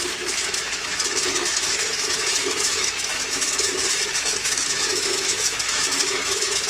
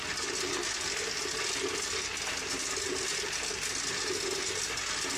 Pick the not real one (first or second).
first